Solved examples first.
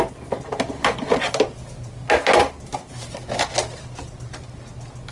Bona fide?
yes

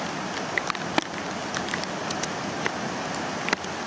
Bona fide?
yes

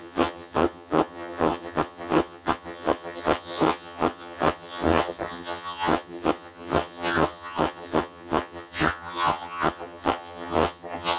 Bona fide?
no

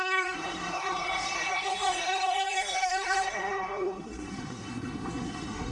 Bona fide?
no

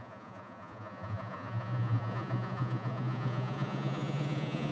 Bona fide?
no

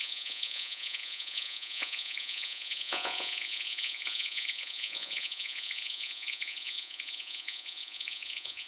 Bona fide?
no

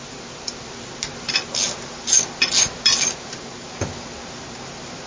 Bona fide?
yes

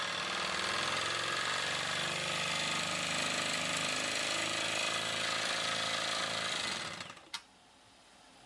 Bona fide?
yes